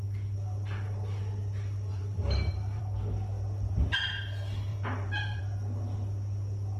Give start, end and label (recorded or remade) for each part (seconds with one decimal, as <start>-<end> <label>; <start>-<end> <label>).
0.0-1.9 recorded; 1.9-2.8 remade; 2.8-4.7 recorded; 4.7-5.4 remade; 5.4-6.8 recorded

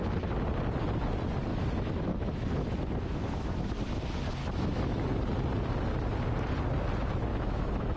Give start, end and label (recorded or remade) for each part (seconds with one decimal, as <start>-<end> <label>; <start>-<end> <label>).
0.0-1.5 recorded; 1.5-3.7 remade; 3.7-4.4 recorded; 4.4-5.0 remade; 5.0-7.3 recorded; 7.3-8.0 remade

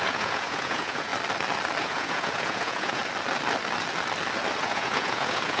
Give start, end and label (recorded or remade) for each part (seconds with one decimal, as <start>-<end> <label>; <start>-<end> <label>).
0.0-1.1 remade; 1.1-1.8 recorded; 1.8-3.0 remade; 3.0-4.6 recorded; 4.6-5.6 remade

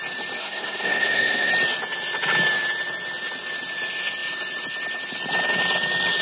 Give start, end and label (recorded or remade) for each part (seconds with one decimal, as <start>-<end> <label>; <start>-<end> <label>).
0.0-0.4 recorded; 0.4-1.5 remade; 1.5-6.2 recorded

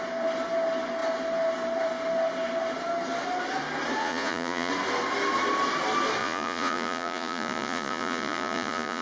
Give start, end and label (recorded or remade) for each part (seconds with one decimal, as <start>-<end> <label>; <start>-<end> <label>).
0.0-4.0 recorded; 4.0-4.7 remade; 4.7-6.2 recorded; 6.2-9.0 remade

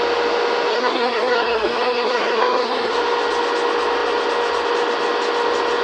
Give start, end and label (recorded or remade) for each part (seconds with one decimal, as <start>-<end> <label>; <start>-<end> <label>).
0.0-0.7 recorded; 0.7-2.9 remade; 2.9-5.8 recorded

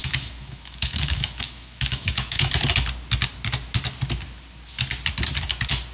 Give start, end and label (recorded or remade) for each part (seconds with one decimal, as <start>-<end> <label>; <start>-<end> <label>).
0.0-2.5 remade; 2.5-5.9 recorded

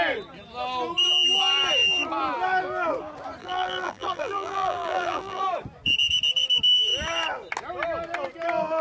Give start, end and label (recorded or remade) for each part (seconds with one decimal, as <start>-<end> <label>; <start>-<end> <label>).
0.0-3.4 recorded; 3.4-5.4 remade; 5.4-8.8 recorded